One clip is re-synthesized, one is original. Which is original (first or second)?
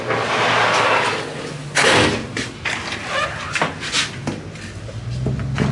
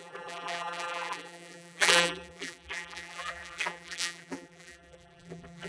first